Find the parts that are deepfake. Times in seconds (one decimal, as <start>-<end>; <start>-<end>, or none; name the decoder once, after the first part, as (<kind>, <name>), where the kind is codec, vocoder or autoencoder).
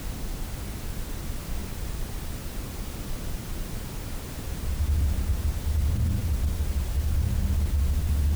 none